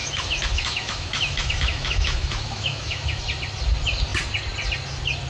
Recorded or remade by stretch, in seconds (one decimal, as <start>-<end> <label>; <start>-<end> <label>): 0.0-3.2 remade; 3.2-5.3 recorded